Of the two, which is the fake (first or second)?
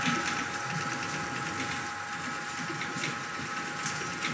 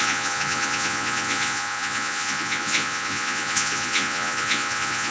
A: second